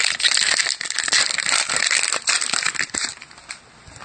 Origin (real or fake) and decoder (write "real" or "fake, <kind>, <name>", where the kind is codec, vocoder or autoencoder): real